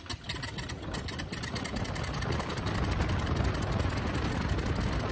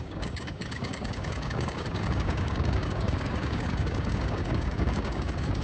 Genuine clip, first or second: first